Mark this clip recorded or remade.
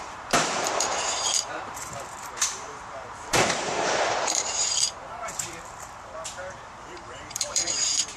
remade